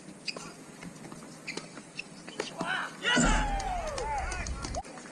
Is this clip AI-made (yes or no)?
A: no